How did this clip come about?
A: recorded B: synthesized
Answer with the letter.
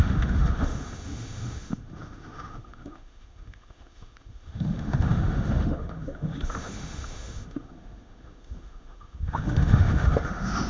B